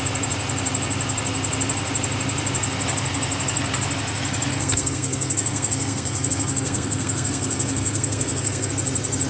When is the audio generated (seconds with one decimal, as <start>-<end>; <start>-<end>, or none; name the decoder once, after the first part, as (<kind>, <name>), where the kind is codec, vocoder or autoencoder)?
4.5-8.7 (codec, SNAC)